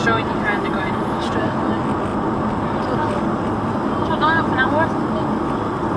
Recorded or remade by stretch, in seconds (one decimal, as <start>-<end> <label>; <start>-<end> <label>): 0.0-6.0 recorded